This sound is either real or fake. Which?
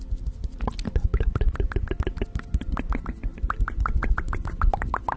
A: real